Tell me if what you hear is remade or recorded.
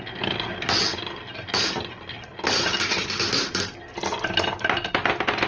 recorded